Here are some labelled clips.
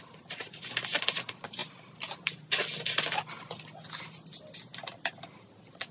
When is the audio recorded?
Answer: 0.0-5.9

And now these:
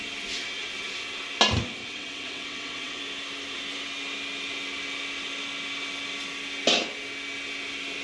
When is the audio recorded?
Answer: 0.0-1.8; 3.0-8.0

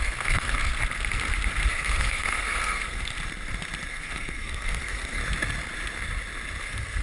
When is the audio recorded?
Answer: 0.7-1.7; 3.1-3.9; 5.2-6.6

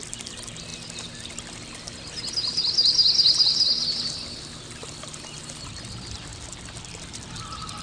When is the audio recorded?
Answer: 0.0-7.8

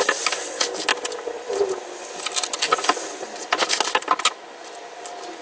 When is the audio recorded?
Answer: 0.0-5.4

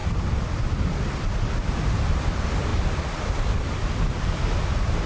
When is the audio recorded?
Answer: 0.0-5.1